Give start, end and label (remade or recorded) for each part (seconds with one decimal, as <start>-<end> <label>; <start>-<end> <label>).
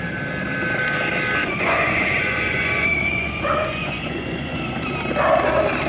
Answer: 0.0-1.4 recorded; 1.4-4.9 remade; 4.9-5.9 recorded